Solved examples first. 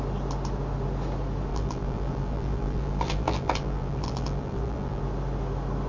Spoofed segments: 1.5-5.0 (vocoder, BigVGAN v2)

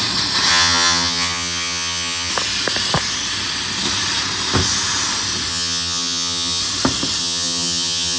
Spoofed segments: 0.5-2.3 (vocoder, HiFi-GAN); 5.5-6.6; 7.2-8.2